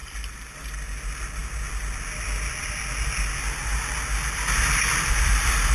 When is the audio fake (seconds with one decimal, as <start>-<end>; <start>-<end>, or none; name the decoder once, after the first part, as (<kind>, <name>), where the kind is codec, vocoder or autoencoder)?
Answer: none